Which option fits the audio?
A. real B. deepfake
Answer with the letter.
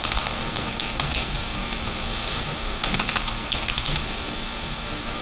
B